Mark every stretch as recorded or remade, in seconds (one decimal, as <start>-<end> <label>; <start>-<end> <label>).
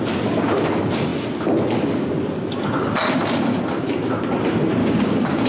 0.0-4.8 recorded; 4.8-5.5 remade